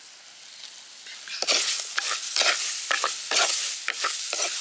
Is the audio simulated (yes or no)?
no